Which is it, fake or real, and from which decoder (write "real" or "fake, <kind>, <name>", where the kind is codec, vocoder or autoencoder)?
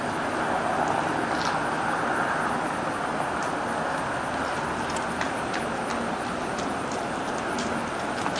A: real